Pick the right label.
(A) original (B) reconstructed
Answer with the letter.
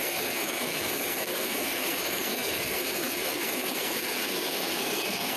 B